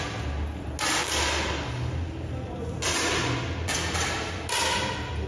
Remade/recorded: recorded